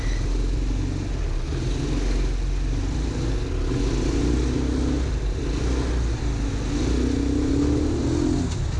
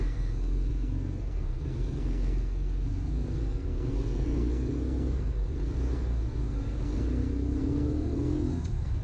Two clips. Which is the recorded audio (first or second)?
first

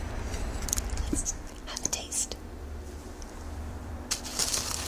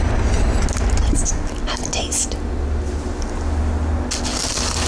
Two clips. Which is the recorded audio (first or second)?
second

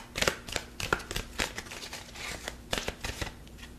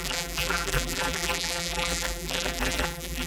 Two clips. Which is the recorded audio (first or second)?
first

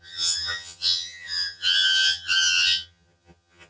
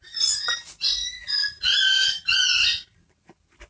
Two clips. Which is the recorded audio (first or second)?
second